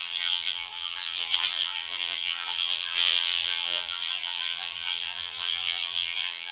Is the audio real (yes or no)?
no